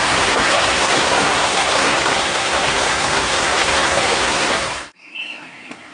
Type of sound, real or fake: fake